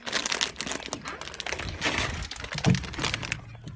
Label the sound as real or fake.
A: real